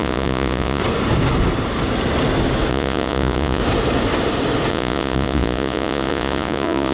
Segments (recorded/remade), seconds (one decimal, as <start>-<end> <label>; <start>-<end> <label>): 0.0-0.8 remade; 0.8-2.7 recorded; 2.7-3.6 remade; 3.6-4.7 recorded; 4.7-6.9 remade